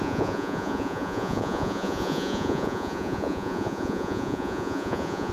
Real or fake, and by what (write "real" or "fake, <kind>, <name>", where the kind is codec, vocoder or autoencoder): fake, vocoder, Vocos